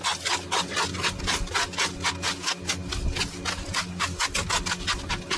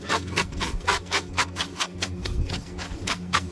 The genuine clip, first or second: first